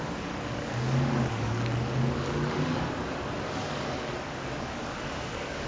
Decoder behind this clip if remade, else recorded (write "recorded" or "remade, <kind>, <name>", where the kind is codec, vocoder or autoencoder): remade, codec, DAC